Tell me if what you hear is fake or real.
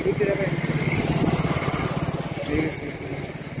real